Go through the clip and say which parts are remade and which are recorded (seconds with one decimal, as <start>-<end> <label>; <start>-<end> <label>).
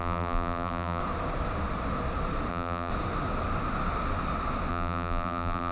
0.0-1.0 remade; 1.0-2.5 recorded; 2.5-2.9 remade; 2.9-4.7 recorded; 4.7-5.7 remade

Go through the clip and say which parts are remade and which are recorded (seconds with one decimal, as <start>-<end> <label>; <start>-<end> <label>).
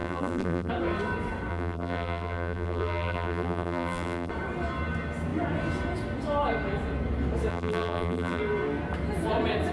0.0-0.7 remade; 0.7-1.5 recorded; 1.5-4.3 remade; 4.3-7.5 recorded; 7.5-8.4 remade; 8.4-9.7 recorded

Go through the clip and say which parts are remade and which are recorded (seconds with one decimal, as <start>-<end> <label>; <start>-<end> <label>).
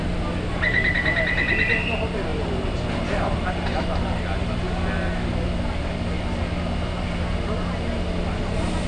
0.0-2.3 recorded; 2.3-3.0 remade; 3.0-8.9 recorded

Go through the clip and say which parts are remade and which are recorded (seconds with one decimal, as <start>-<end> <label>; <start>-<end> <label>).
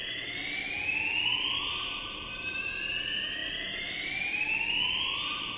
0.0-5.6 remade